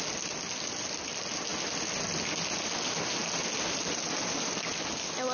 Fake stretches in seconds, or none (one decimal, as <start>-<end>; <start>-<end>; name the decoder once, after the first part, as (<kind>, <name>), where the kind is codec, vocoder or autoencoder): none